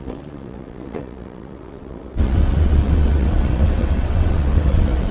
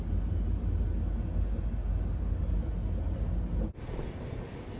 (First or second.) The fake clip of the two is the first